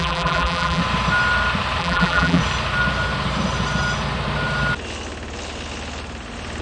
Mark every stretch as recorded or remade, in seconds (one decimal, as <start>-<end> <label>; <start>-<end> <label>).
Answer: 0.0-0.8 remade; 0.8-1.8 recorded; 1.8-2.4 remade; 2.4-6.6 recorded